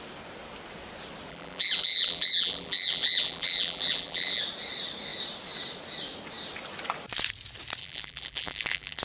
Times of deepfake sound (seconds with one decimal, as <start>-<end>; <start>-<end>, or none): 1.3-4.4; 7.8-9.0

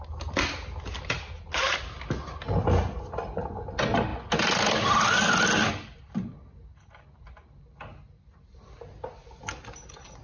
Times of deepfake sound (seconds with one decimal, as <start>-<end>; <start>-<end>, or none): none

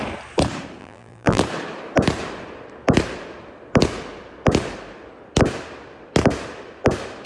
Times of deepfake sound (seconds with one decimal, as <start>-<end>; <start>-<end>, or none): 0.8-1.4

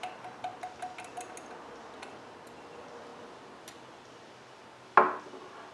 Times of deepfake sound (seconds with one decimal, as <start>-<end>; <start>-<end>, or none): none

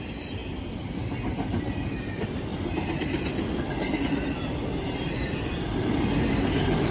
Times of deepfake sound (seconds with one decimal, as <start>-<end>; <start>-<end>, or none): 0.0-0.4; 1.9-6.9

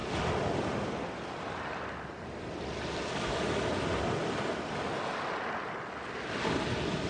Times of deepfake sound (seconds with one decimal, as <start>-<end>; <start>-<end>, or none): none

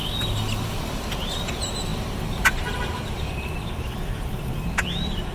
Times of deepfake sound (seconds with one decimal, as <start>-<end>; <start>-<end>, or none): 0.8-5.3

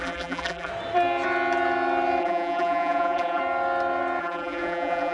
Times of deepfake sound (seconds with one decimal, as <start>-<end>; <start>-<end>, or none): 0.0-0.7; 2.2-3.4; 4.2-5.1